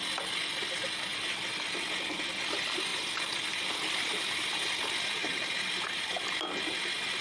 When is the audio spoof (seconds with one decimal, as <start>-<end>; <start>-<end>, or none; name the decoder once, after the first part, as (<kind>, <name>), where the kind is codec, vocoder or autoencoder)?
2.9-4.5 (vocoder, BigVGAN v2); 5.2-6.1